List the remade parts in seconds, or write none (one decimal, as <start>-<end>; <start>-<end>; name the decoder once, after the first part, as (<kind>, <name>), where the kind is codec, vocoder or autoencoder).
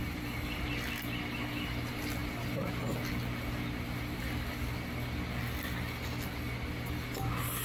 0.0-0.7 (vocoder, BigVGAN v2)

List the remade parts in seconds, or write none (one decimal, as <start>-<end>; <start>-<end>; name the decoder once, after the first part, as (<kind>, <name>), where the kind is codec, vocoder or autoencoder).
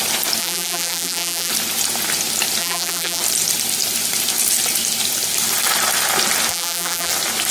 0.4-1.5 (vocoder, BigVGAN v2); 2.6-3.2; 6.5-7.1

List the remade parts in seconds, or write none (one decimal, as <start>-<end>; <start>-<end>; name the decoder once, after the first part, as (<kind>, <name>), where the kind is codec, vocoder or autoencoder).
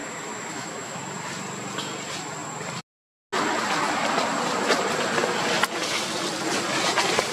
0.0-1.0 (autoencoder, DAC-VAE)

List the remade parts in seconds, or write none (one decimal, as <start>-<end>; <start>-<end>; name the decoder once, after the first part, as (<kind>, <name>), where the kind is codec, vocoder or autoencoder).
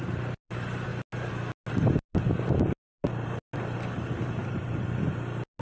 4.4-5.1 (vocoder, BigVGAN v2)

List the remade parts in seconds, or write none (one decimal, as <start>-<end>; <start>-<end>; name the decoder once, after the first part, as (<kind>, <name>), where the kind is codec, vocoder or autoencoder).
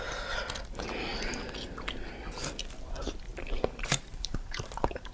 3.3-5.1 (vocoder, BigVGAN v2)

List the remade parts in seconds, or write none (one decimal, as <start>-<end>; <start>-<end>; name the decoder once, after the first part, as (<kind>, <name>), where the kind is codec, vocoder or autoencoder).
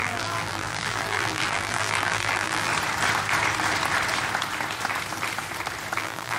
0.0-2.7 (vocoder, BigVGAN v2); 6.0-6.4